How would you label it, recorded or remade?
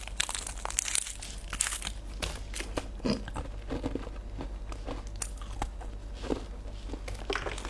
recorded